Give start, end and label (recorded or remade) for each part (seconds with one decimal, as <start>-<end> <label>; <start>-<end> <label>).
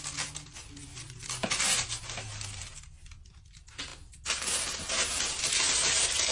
0.0-0.8 recorded; 0.8-2.0 remade; 2.0-6.3 recorded